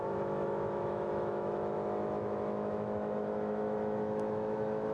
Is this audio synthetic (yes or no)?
yes